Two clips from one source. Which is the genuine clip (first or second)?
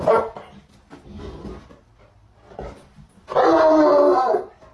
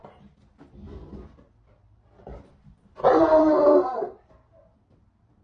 first